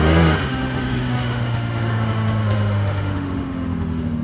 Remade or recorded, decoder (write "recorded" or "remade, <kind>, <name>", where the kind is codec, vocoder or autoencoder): remade, autoencoder, DAC-VAE